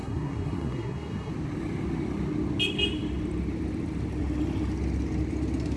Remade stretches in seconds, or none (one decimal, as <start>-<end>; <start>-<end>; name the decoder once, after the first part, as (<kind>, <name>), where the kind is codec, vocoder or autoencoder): 0.0-1.3 (codec, SNAC)